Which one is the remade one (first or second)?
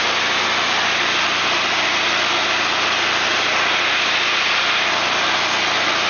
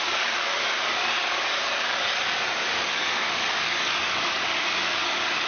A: second